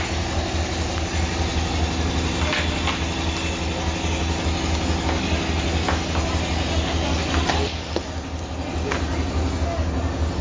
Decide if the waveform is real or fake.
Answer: real